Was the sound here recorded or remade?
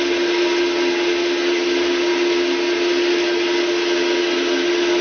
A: recorded